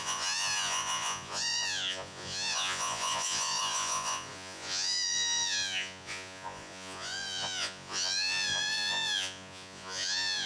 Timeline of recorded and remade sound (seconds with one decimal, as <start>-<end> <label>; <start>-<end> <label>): 0.0-10.5 remade